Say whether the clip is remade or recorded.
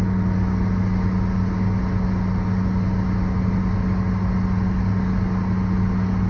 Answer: recorded